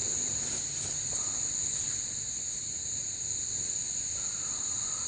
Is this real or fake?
real